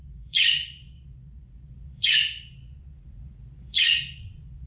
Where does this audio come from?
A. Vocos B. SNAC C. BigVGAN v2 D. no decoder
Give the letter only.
A